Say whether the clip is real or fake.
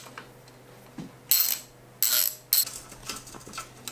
real